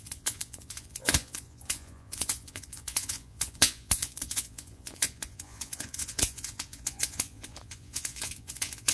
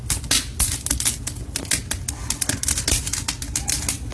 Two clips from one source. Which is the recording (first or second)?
second